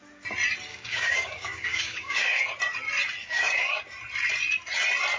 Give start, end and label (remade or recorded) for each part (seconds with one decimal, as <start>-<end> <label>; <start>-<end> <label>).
0.0-0.7 recorded; 0.7-2.4 remade; 2.4-3.2 recorded; 3.2-3.8 remade; 3.8-5.2 recorded